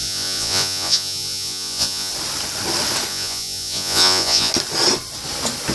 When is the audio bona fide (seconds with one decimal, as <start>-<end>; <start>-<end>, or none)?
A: 2.1-3.1; 4.5-5.7